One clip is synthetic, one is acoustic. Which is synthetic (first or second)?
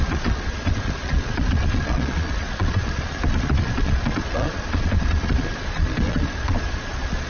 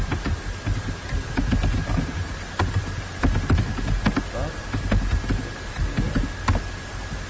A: first